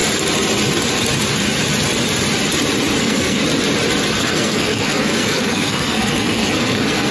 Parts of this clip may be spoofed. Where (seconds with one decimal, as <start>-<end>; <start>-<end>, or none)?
3.0-3.4; 4.2-7.1